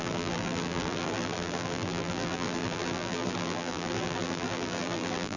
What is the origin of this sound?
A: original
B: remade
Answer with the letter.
B